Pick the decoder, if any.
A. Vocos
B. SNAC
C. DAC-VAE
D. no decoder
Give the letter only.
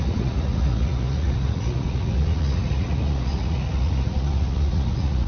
A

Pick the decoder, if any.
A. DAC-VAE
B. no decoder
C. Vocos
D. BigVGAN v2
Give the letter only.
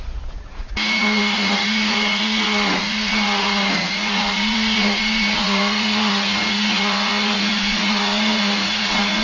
C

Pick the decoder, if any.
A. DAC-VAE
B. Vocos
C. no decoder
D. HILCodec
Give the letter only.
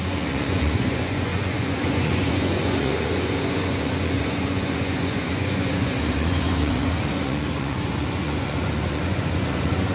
B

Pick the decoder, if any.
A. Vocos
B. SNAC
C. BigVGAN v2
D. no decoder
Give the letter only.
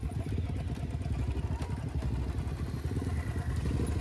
D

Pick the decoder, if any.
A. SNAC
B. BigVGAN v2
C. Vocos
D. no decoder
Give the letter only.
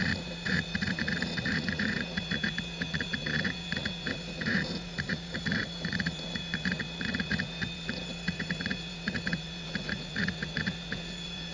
C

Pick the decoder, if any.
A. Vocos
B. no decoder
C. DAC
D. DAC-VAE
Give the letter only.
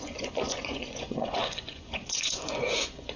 A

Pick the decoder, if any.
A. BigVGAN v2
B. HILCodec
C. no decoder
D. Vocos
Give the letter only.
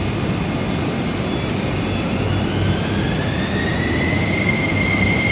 C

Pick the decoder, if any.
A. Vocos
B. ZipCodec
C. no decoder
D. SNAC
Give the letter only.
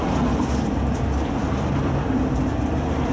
C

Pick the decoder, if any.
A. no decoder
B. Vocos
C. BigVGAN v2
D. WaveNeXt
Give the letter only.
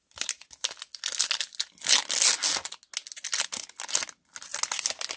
A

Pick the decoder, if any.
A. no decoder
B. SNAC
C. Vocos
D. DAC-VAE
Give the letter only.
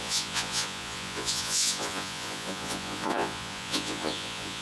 C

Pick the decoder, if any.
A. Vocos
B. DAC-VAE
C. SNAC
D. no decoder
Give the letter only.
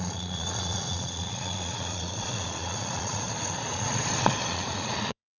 A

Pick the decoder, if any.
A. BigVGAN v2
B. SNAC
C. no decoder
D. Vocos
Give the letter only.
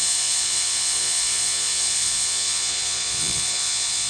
D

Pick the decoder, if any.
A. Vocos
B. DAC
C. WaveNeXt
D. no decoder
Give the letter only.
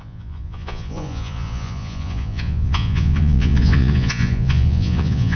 A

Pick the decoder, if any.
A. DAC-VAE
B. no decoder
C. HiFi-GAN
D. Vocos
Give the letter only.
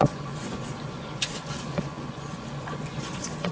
D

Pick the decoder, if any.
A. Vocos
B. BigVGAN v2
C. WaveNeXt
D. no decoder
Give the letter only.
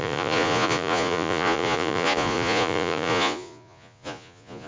A